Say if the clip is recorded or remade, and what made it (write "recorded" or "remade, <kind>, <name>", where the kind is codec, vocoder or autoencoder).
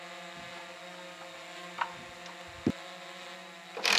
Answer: recorded